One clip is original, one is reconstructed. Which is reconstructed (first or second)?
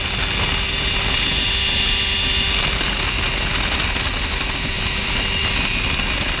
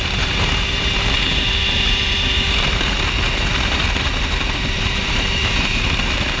second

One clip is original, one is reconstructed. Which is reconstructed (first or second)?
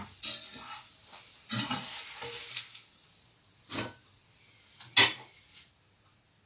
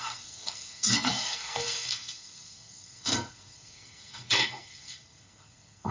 second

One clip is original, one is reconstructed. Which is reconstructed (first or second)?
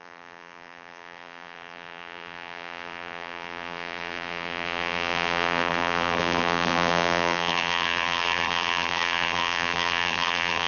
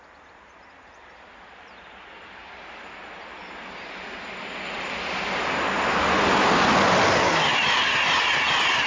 first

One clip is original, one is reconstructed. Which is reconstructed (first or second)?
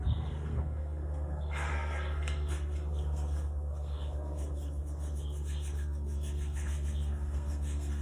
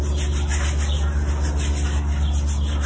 first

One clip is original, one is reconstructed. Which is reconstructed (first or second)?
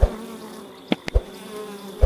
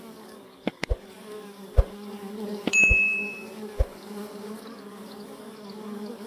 second